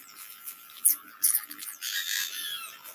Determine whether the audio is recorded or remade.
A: remade